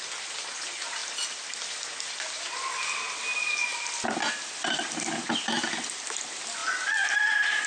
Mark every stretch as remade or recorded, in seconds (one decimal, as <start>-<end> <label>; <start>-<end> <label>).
0.0-7.7 recorded